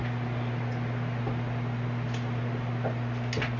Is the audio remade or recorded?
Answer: recorded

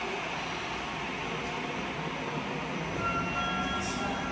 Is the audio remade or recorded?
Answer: recorded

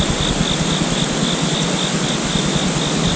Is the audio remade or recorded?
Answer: recorded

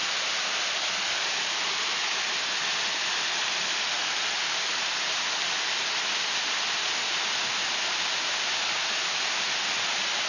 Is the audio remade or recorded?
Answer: recorded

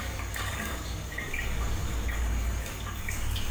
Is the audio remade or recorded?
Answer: remade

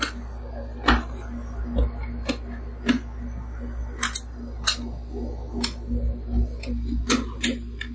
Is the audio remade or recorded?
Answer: recorded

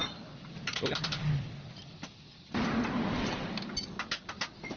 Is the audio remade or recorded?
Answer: recorded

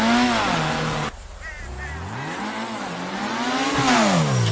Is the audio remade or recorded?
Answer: recorded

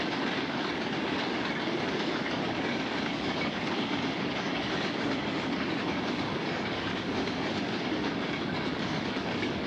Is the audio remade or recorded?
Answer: remade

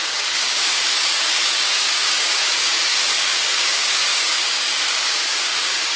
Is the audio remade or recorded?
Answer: remade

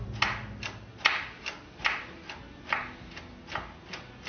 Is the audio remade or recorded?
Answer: recorded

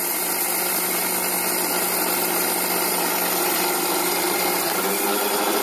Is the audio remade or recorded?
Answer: recorded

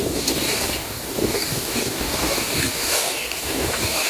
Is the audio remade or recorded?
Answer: remade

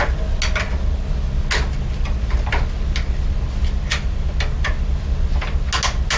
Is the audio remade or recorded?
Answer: recorded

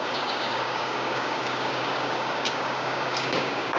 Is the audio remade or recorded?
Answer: remade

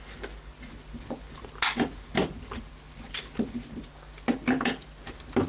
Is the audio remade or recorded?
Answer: recorded